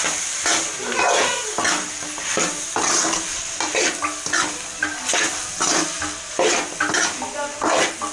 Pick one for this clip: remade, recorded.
recorded